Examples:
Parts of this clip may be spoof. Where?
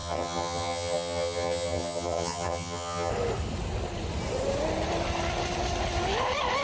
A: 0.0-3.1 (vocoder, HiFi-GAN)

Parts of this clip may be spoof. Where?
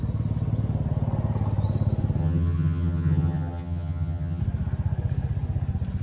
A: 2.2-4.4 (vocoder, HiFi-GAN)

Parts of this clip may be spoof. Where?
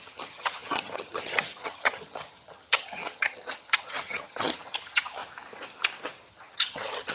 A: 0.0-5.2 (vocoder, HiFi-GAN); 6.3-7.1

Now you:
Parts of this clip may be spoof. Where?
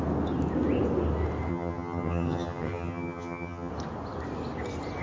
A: 1.5-3.7 (vocoder, HiFi-GAN)